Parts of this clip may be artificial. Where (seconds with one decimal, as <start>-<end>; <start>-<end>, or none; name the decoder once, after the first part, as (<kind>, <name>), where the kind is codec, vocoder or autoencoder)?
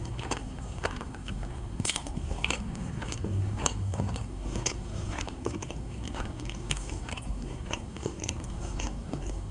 0.0-9.5 (codec, SNAC)